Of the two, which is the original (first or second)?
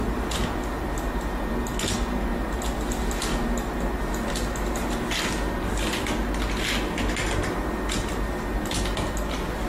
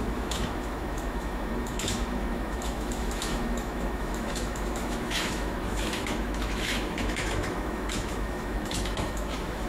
first